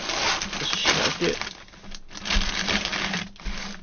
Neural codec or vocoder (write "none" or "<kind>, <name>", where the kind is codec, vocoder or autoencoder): none